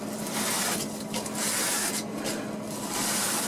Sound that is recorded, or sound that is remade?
recorded